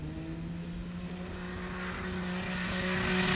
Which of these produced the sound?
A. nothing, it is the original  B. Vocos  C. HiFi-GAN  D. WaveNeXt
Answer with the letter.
A